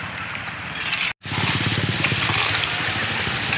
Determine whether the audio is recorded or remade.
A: recorded